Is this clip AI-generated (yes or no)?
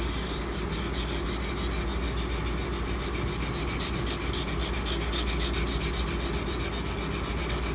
no